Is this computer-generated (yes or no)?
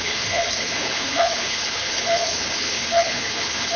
yes